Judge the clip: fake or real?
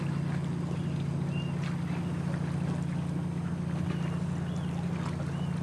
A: real